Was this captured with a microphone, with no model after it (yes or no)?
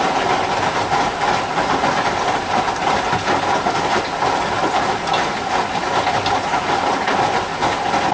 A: yes